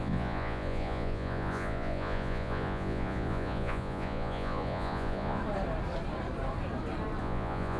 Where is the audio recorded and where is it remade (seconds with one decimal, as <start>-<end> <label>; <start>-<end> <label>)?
0.0-5.4 remade; 5.4-7.2 recorded; 7.2-7.8 remade